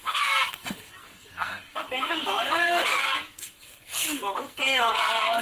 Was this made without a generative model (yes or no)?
no